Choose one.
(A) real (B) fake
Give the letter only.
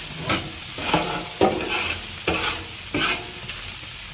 A